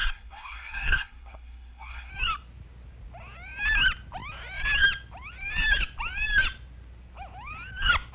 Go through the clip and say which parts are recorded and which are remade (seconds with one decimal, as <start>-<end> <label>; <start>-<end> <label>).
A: 0.0-2.1 remade; 2.1-8.1 recorded